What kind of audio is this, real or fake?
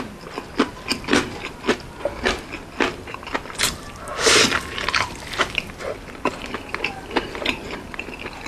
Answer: fake